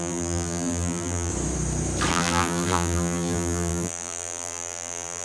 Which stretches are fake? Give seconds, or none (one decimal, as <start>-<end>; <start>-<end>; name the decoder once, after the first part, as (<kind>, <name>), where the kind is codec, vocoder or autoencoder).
0.0-1.3 (vocoder, BigVGAN v2); 2.1-5.2